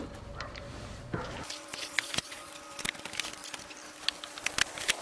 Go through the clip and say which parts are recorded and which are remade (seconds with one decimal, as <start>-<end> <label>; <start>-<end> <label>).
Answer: 0.0-1.7 recorded; 1.7-2.5 remade; 2.5-5.0 recorded